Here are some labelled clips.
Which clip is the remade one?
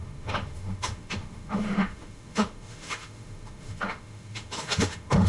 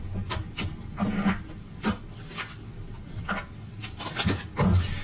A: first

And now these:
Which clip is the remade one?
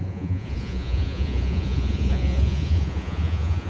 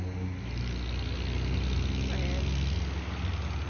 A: first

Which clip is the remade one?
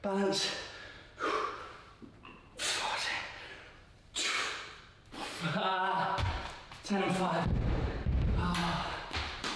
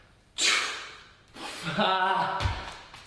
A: first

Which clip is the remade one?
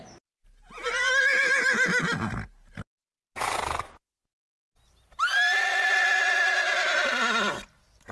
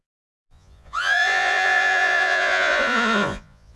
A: second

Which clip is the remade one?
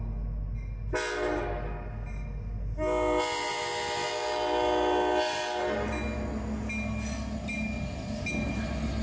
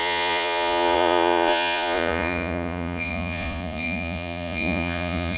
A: second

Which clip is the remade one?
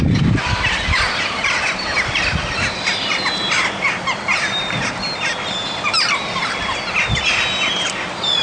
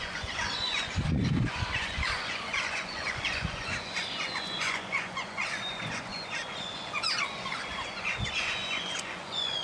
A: second